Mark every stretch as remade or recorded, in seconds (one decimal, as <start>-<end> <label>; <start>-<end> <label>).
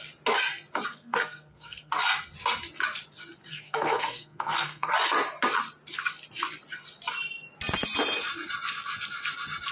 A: 0.0-0.9 recorded; 0.9-1.9 remade; 1.9-3.5 recorded; 3.5-4.9 remade; 4.9-9.7 recorded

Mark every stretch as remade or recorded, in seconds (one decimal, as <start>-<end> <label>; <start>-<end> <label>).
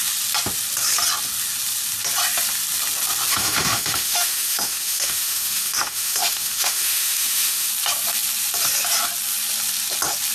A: 0.0-3.3 recorded; 3.3-7.7 remade; 7.7-10.3 recorded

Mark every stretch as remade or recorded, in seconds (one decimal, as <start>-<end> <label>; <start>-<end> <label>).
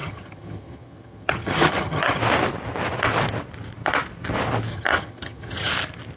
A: 0.0-2.2 remade; 2.2-4.7 recorded; 4.7-5.7 remade; 5.7-6.2 recorded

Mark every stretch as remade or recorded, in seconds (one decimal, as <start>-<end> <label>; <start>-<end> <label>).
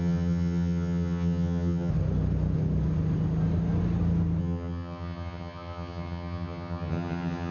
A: 0.0-1.9 remade; 1.9-4.4 recorded; 4.4-7.5 remade